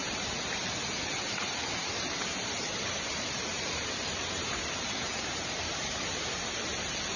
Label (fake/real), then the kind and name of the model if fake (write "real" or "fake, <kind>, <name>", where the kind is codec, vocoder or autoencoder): fake, vocoder, BigVGAN v2